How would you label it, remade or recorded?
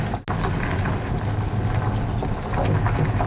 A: recorded